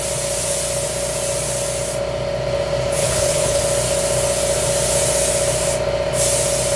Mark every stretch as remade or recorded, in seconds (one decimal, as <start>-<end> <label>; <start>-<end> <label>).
0.0-3.0 recorded; 3.0-3.6 remade; 3.6-6.8 recorded